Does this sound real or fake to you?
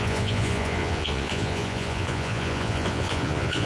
fake